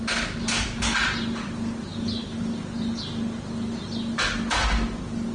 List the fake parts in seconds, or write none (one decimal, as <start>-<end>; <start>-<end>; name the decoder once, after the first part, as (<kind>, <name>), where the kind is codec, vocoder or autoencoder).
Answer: none